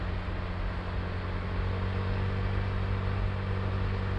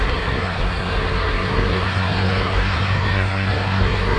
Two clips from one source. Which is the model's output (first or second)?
second